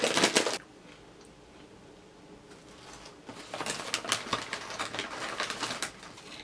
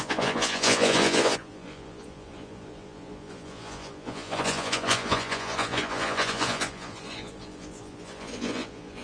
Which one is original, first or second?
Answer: first